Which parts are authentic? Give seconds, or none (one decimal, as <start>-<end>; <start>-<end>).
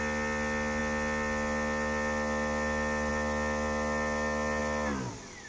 0.0-5.5